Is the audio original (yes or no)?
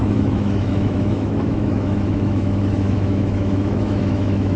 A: no